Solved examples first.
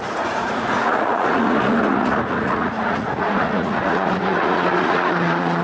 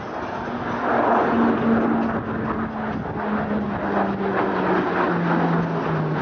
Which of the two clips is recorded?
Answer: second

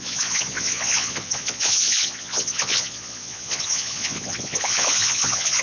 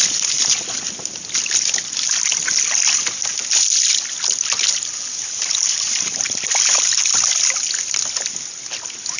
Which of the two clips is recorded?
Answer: second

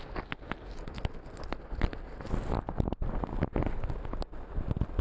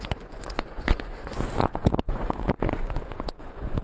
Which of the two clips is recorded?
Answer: first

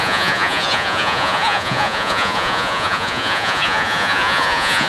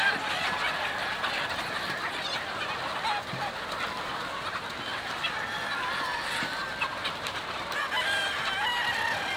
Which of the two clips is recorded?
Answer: second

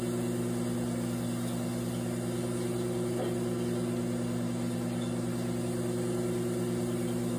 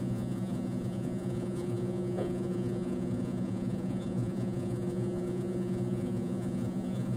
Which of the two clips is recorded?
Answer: first